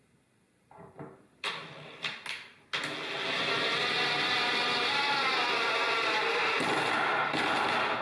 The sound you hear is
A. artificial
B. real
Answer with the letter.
B